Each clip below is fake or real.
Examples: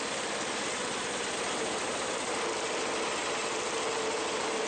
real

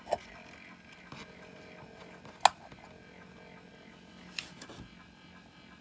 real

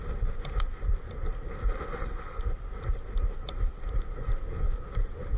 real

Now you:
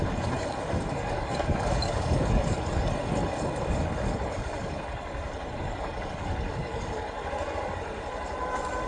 fake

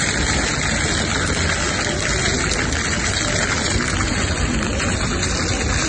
real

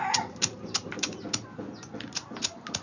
real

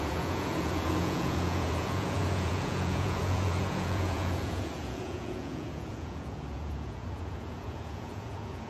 fake